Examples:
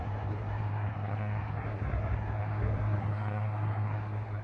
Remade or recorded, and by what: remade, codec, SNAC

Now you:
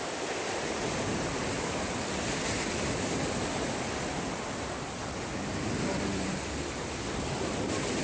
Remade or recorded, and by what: recorded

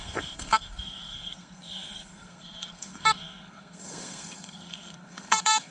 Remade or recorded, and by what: remade, codec, SNAC